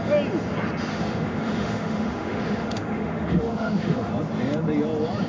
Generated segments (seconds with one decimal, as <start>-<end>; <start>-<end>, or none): 0.9-4.1